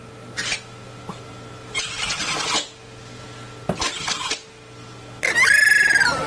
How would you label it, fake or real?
real